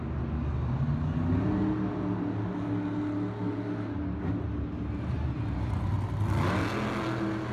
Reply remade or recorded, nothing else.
recorded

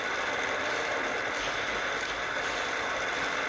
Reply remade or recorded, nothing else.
recorded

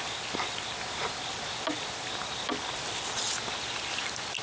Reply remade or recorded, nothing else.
recorded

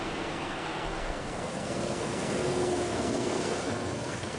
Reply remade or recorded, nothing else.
remade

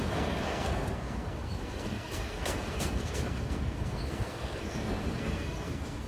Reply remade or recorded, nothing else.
remade